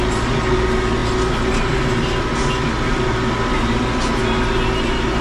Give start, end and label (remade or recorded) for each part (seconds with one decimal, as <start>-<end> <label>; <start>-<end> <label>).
0.0-5.2 recorded